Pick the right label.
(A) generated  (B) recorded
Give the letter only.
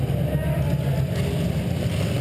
B